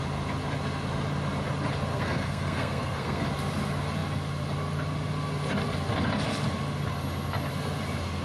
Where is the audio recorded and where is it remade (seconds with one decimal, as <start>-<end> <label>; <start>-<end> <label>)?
0.0-1.9 recorded; 1.9-3.2 remade; 3.2-8.2 recorded

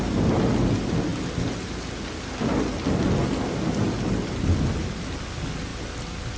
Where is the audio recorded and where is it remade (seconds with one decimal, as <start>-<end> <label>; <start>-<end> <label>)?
0.0-6.4 recorded

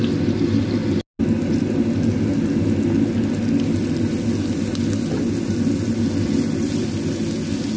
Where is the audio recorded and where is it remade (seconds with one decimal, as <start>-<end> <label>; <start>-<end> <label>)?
0.0-7.8 recorded